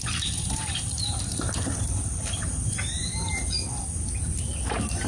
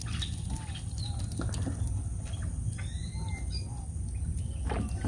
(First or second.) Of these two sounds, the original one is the second